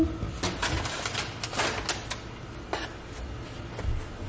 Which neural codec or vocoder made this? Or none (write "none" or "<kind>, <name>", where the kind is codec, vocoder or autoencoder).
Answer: none